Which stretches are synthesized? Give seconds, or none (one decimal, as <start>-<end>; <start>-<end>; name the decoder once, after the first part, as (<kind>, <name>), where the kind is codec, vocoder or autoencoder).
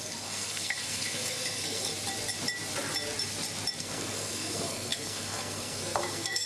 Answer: 0.0-1.9 (codec, SNAC); 3.8-6.5